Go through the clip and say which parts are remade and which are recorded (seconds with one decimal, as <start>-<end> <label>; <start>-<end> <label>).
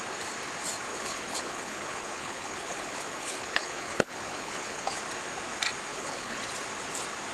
0.0-0.9 recorded; 0.9-5.0 remade; 5.0-5.9 recorded; 5.9-6.4 remade; 6.4-7.3 recorded